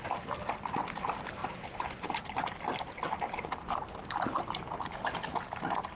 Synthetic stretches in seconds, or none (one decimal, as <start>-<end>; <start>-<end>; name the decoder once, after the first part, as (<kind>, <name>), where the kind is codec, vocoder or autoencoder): none